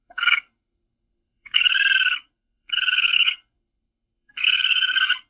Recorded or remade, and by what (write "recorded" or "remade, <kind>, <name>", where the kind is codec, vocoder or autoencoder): remade, codec, SNAC